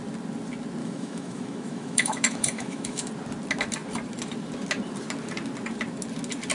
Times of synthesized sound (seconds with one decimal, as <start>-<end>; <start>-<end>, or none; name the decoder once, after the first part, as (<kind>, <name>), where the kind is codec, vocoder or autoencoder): 0.8-3.1 (autoencoder, DAC-VAE)